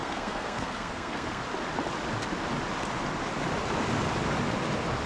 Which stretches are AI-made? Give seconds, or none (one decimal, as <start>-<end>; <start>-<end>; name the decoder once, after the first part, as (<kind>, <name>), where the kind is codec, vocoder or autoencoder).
0.0-1.4 (codec, SNAC)